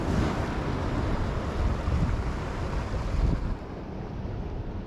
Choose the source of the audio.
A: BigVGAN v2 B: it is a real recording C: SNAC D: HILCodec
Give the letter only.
B